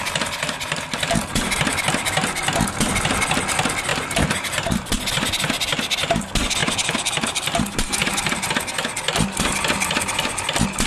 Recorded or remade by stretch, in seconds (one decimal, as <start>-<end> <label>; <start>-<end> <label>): 0.0-3.9 recorded; 3.9-4.9 remade; 4.9-6.6 recorded; 6.6-8.5 remade; 8.5-10.9 recorded